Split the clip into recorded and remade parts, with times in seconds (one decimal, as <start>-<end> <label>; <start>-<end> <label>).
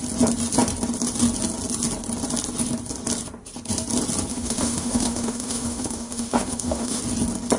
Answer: 0.0-4.3 recorded; 4.3-7.0 remade; 7.0-7.6 recorded